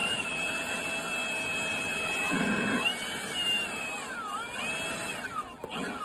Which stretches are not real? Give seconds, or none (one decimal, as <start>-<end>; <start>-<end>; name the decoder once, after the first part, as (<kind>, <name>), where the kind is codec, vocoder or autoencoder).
0.0-0.9 (vocoder, BigVGAN v2); 1.7-2.5; 5.1-6.0